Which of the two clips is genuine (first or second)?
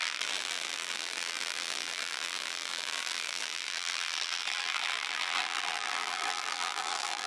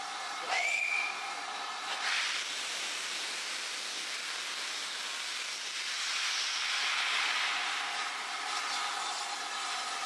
second